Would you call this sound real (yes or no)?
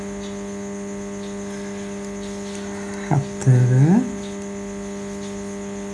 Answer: yes